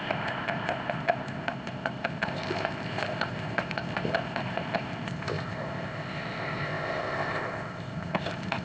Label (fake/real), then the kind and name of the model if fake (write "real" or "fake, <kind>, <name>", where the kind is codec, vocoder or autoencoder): fake, codec, ZipCodec